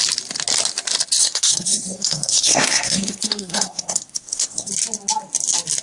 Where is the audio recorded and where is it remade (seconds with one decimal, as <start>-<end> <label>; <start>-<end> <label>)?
0.0-1.2 recorded; 1.2-4.7 remade; 4.7-5.8 recorded